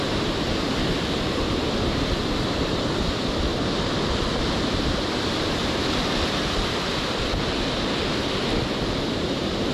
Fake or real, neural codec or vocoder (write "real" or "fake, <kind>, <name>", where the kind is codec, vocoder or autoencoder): real